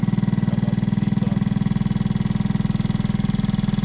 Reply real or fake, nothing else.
real